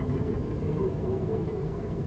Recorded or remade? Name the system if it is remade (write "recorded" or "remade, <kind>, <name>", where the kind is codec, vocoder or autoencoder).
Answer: remade, codec, SNAC